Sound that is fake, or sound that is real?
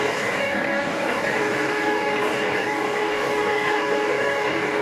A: fake